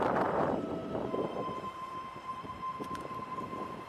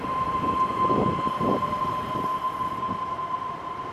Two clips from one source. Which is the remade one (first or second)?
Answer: first